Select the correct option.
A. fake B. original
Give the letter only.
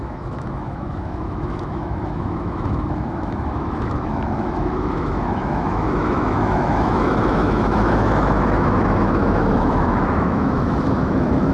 A